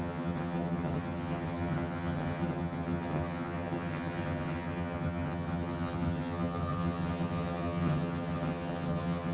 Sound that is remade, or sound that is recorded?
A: remade